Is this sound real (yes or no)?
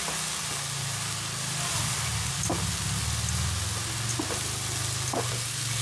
yes